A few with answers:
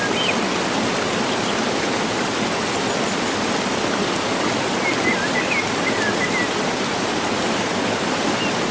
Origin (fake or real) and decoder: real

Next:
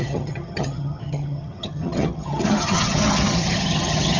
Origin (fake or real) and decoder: fake, vocoder, HiFi-GAN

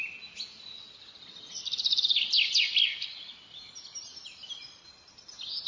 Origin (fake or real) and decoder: real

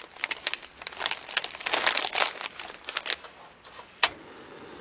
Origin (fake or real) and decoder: real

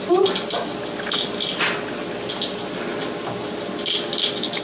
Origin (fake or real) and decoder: real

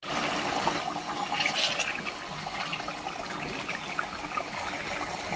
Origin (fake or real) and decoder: real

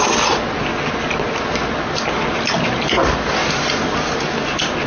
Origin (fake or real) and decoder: real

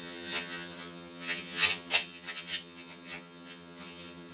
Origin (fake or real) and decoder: fake, vocoder, HiFi-GAN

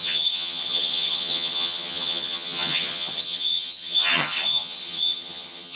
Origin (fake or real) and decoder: fake, vocoder, HiFi-GAN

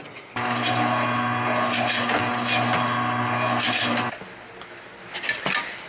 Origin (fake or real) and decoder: real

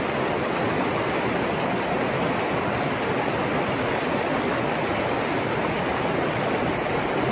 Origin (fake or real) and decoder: real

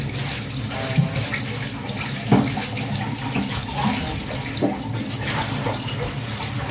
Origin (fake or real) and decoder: real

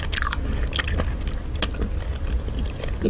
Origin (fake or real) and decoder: real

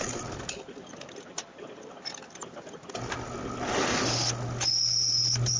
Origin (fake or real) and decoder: real